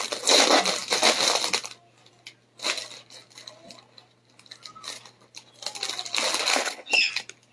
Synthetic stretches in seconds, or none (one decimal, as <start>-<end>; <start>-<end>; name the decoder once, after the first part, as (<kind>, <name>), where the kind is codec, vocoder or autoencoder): 6.5-7.1 (codec, HILCodec)